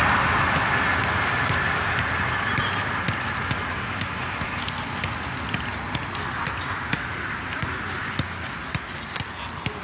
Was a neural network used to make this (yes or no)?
no